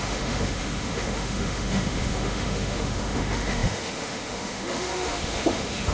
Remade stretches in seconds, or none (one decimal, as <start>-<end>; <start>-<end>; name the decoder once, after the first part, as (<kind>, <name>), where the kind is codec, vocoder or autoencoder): 0.0-5.9 (autoencoder, DAC-VAE)